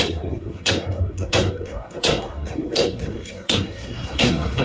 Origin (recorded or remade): remade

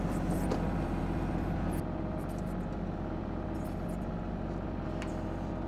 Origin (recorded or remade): recorded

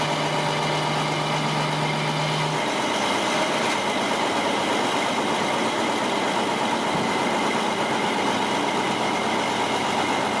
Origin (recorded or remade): recorded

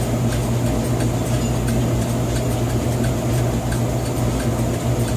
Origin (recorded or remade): recorded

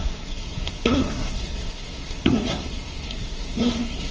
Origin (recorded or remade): remade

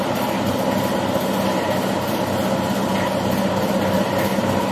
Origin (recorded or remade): recorded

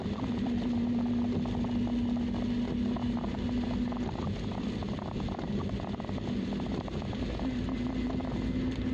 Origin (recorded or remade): recorded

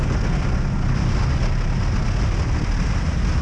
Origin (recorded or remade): recorded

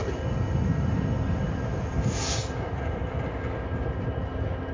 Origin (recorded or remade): recorded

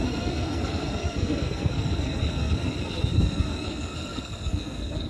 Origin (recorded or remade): remade